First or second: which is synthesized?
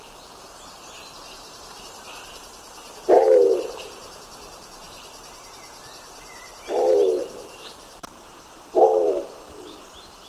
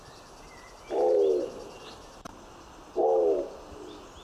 first